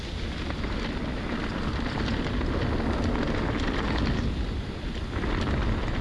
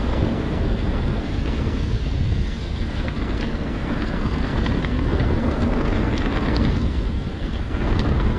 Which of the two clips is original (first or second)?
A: first